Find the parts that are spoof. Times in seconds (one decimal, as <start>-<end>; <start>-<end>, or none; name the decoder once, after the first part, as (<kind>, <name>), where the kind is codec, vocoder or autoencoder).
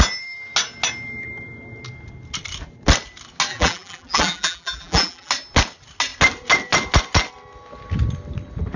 3.5-5.3 (vocoder, BigVGAN v2)